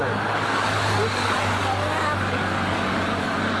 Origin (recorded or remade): remade